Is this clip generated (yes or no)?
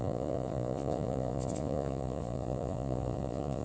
yes